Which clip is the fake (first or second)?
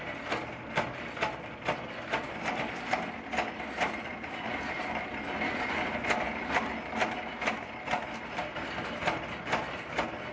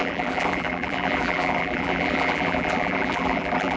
second